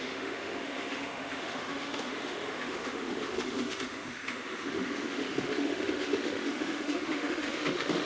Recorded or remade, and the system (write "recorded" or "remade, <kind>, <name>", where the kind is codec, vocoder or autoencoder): remade, autoencoder, DAC-VAE